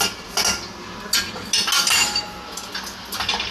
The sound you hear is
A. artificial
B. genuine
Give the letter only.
B